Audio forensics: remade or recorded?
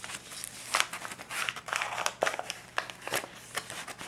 recorded